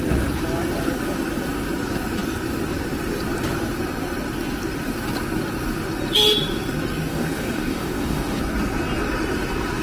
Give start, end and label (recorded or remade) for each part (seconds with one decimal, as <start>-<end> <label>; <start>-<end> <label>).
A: 0.0-7.1 recorded; 7.1-8.4 remade; 8.4-9.8 recorded